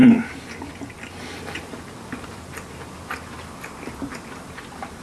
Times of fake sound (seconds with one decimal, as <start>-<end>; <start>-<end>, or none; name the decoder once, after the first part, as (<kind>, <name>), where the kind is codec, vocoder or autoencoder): none